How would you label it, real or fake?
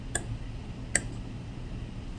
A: real